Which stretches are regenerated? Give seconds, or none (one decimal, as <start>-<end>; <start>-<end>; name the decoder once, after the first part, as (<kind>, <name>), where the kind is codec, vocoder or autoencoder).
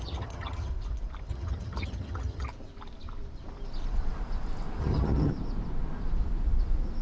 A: 0.0-0.7 (vocoder, HiFi-GAN); 1.3-2.5; 4.8-5.3